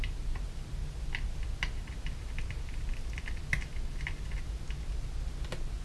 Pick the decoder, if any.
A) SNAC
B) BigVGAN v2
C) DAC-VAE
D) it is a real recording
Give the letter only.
D